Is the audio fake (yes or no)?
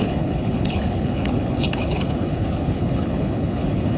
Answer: yes